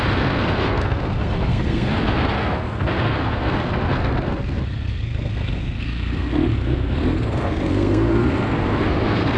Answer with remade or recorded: remade